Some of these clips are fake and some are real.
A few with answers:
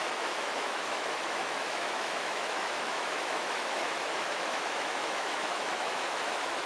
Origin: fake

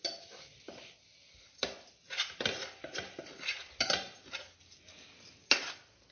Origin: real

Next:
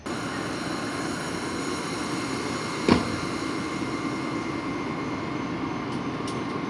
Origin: real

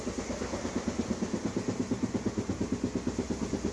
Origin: real